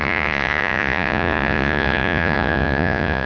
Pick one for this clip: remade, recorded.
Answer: remade